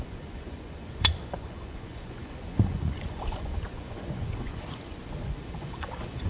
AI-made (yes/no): yes